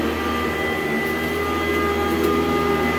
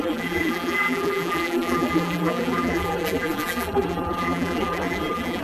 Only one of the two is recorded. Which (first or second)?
first